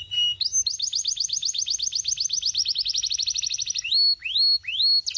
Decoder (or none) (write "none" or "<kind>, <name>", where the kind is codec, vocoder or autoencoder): none